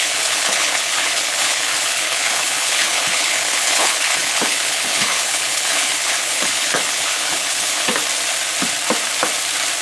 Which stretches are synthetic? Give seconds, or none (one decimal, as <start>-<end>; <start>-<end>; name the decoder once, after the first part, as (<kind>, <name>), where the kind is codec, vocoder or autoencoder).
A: 0.0-8.0 (codec, HILCodec)